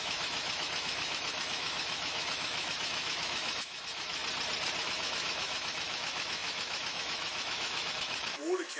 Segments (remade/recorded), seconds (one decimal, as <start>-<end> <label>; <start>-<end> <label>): 0.0-4.2 remade; 4.2-4.8 recorded; 4.8-8.8 remade